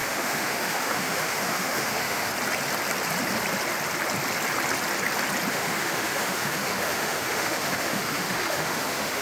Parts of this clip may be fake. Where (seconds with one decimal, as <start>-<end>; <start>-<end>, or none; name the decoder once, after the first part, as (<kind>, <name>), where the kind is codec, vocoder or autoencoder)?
0.0-2.3 (autoencoder, DAC-VAE); 5.5-9.2